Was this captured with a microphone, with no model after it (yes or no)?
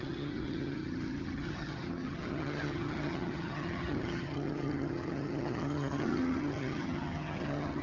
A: no